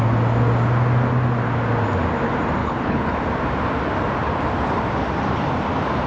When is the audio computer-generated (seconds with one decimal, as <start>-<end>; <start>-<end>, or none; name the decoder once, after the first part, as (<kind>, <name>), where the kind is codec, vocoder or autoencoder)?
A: 2.6-3.2 (codec, HILCodec)